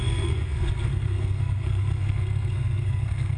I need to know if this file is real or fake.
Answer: fake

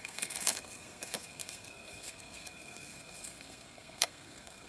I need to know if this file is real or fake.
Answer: fake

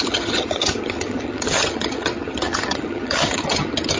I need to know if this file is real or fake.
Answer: fake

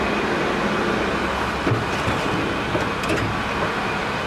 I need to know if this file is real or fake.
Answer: real